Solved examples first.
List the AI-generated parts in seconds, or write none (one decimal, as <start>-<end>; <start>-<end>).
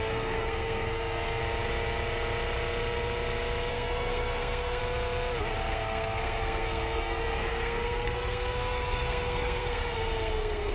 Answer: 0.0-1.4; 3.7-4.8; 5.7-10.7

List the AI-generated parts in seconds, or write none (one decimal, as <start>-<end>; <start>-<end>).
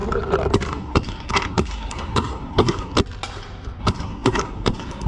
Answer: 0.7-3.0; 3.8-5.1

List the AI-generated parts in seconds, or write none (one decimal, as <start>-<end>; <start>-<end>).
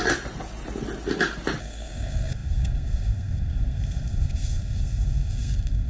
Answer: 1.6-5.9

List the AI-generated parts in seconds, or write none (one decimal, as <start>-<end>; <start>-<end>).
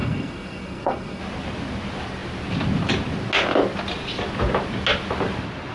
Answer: 0.0-1.2